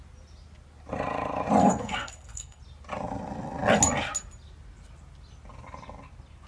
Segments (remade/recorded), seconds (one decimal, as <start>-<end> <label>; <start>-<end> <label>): 0.0-1.6 recorded; 1.6-2.6 remade; 2.6-6.5 recorded